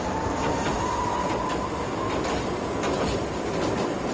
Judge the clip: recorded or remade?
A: recorded